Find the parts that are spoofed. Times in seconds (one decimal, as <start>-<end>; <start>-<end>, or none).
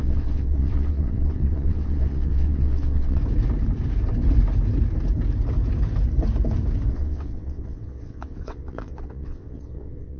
0.0-3.2; 6.9-10.2